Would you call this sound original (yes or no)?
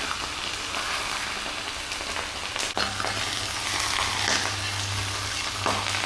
yes